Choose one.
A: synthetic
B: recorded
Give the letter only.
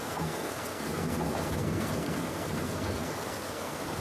A